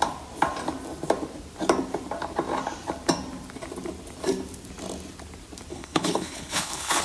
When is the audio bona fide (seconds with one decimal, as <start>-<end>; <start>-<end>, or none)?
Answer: 0.0-5.7